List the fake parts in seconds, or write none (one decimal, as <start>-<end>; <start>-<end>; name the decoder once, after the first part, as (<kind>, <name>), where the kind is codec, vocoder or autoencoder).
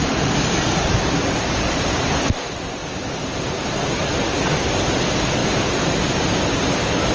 none